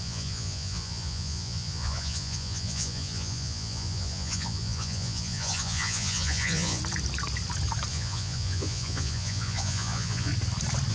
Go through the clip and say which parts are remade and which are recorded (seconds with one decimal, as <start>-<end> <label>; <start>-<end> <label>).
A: 0.0-6.8 remade; 6.8-7.9 recorded; 7.9-10.3 remade; 10.3-10.9 recorded